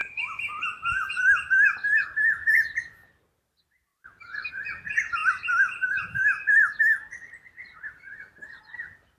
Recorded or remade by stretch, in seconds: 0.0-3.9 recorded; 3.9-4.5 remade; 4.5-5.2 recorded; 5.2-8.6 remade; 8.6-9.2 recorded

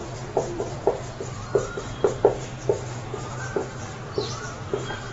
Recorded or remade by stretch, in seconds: 0.0-3.1 remade; 3.1-3.6 recorded; 3.6-5.1 remade